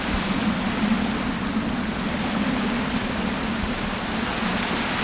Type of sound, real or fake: real